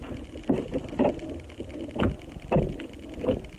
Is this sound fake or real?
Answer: real